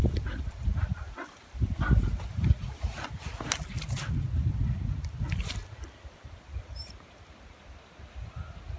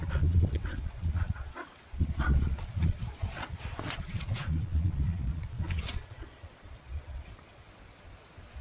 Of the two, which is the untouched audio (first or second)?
first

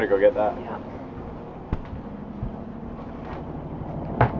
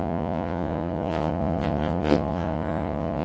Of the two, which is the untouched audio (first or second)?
first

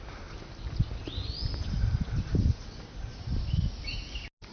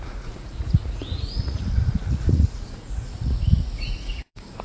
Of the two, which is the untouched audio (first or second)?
first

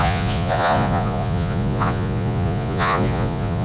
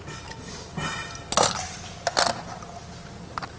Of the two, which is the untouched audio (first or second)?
second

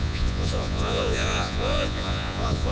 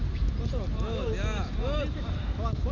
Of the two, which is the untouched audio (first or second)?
second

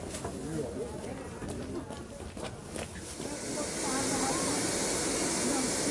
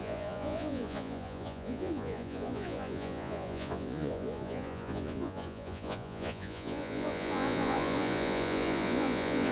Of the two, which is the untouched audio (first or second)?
first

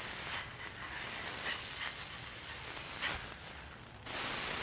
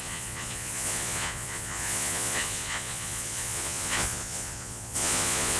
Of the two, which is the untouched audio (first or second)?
first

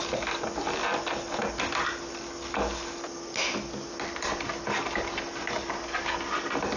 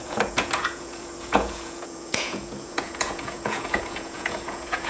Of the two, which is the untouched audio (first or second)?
first